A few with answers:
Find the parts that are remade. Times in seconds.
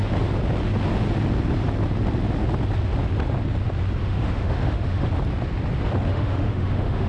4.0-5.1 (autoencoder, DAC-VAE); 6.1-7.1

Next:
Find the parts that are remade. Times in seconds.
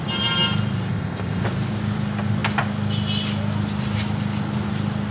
0.9-1.4 (codec, ZipCodec)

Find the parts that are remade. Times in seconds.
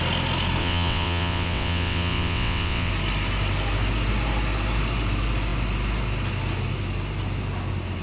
0.6-2.9 (vocoder, WaveNeXt)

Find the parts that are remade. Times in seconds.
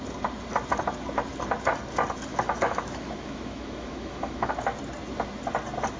2.3-4.5 (autoencoder, DAC-VAE)